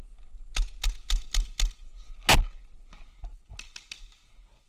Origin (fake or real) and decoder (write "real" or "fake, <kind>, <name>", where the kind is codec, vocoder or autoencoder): real